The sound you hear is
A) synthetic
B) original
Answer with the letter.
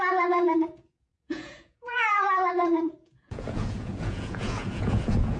A